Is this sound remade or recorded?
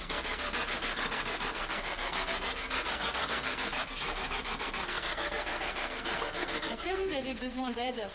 remade